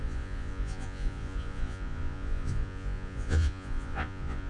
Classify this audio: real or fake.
fake